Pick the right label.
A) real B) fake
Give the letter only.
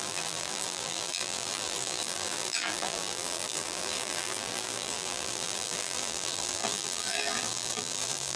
B